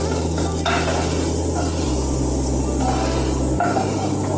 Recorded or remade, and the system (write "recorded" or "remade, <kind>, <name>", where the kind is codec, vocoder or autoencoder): recorded